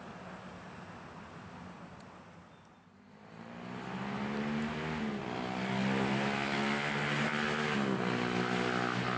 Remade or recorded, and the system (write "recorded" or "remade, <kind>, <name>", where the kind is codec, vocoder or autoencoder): recorded